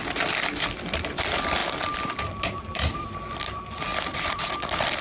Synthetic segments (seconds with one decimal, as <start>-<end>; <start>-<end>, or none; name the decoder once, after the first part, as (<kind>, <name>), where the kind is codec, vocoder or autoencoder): none

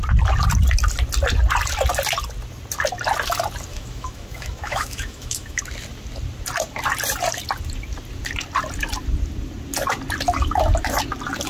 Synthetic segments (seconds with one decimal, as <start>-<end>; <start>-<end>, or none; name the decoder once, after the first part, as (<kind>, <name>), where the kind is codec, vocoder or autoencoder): 3.7-5.6 (autoencoder, DAC-VAE)

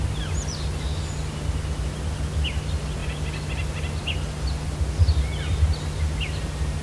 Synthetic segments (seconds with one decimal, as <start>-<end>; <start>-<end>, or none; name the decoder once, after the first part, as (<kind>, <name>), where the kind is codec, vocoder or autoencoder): none

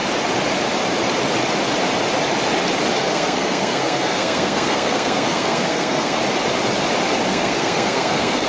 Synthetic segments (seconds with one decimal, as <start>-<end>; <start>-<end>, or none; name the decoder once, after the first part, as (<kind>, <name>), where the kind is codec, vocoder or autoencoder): 2.9-6.2 (codec, SNAC); 7.3-8.5

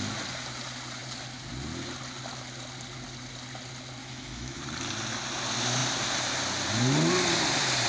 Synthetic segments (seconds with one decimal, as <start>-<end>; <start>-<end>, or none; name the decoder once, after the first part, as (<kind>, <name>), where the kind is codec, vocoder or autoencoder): 4.0-4.6 (autoencoder, DAC-VAE)

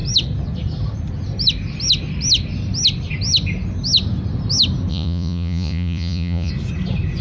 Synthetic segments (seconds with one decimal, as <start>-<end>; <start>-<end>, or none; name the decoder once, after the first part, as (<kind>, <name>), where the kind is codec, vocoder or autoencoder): 4.9-6.5 (vocoder, Vocos)

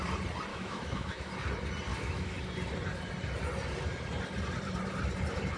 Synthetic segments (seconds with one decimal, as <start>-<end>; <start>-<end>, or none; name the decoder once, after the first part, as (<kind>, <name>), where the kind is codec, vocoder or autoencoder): 0.5-1.3 (autoencoder, DAC-VAE); 1.9-2.4